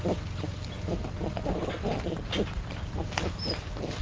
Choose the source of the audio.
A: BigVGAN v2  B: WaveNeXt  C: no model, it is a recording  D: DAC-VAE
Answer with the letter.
C